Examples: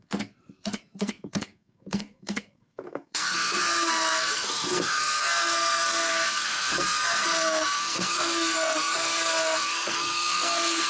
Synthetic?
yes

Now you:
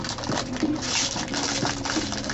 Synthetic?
yes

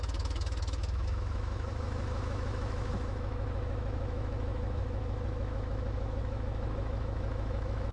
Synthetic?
yes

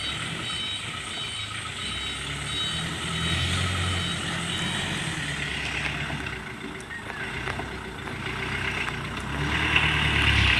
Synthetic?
no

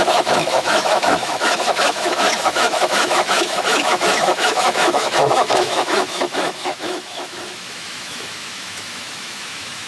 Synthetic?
yes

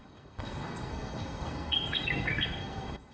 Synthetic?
yes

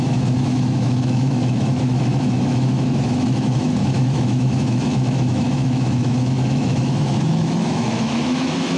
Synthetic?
yes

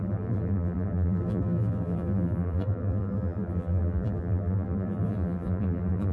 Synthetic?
yes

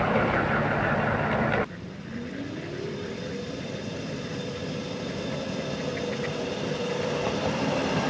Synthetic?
no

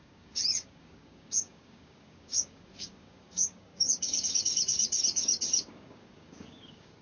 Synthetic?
yes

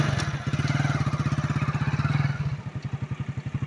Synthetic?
no